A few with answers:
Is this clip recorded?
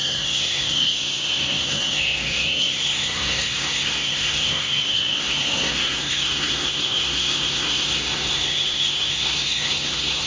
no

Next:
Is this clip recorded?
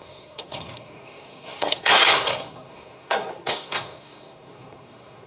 no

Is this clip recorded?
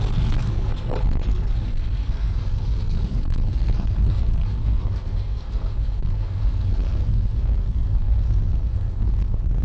no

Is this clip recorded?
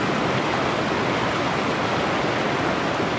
yes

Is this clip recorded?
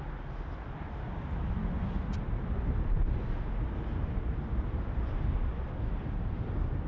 yes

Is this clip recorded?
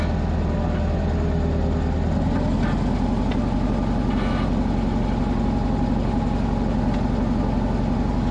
yes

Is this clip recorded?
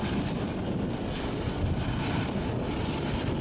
yes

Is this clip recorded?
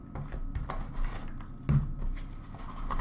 yes